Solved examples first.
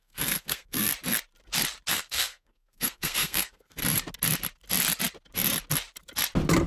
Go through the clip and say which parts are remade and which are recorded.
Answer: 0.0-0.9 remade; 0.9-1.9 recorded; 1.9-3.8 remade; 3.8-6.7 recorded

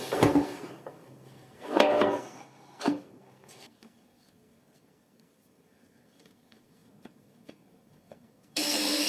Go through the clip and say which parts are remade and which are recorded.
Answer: 0.0-9.1 remade

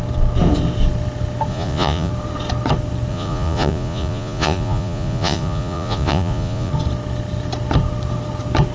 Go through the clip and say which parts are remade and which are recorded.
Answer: 0.0-1.5 recorded; 1.5-2.1 remade; 2.1-3.1 recorded; 3.1-6.7 remade; 6.7-8.7 recorded

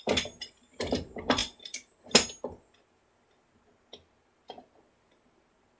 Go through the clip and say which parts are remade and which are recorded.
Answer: 0.0-5.8 recorded

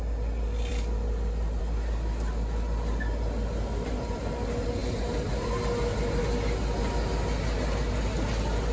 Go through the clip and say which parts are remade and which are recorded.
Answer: 0.0-8.7 recorded

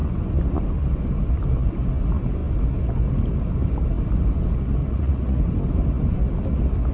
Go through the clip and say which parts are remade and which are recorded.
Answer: 0.0-4.8 recorded; 4.8-5.4 remade; 5.4-6.9 recorded

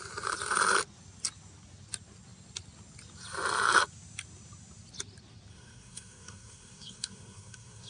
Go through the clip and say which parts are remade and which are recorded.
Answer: 0.0-5.5 recorded; 5.5-7.9 remade

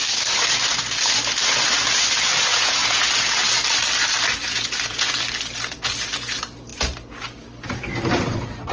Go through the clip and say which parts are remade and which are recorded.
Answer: 0.0-2.5 recorded; 2.5-3.1 remade; 3.1-4.4 recorded; 4.4-5.1 remade; 5.1-8.7 recorded